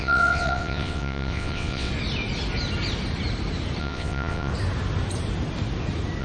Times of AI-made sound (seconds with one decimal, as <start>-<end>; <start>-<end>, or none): 0.0-1.9; 3.8-4.5